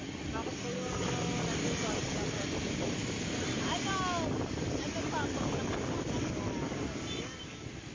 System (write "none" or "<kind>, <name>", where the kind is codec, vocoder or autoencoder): none